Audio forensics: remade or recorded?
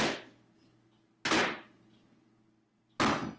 recorded